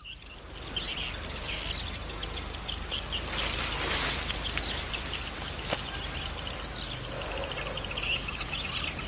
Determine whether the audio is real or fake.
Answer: real